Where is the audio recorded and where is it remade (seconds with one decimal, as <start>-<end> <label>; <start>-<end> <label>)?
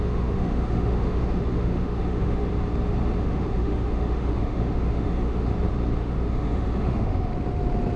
0.0-2.5 remade; 2.5-3.2 recorded; 3.2-5.5 remade; 5.5-6.0 recorded; 6.0-7.3 remade; 7.3-8.0 recorded